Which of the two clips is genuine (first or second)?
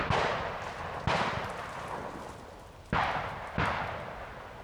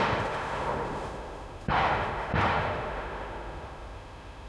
first